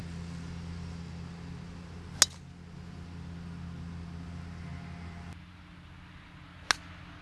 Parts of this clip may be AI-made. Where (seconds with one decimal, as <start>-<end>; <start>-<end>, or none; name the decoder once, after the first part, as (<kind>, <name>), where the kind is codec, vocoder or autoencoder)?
none

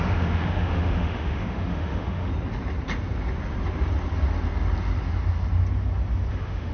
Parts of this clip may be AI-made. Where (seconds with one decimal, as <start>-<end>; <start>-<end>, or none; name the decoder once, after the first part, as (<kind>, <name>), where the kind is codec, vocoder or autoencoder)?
0.0-2.3 (autoencoder, DAC-VAE); 6.3-6.7

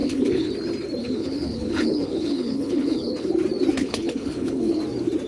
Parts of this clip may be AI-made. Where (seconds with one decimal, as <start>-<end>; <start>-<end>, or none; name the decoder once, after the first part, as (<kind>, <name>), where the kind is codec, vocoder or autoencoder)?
0.0-0.5 (codec, HILCodec); 1.0-3.3; 3.8-4.8